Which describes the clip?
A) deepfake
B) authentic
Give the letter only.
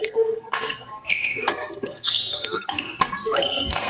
A